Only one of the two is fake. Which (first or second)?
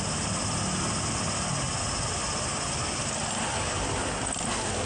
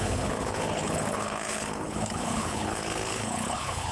second